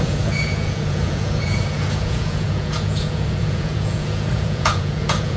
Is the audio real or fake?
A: fake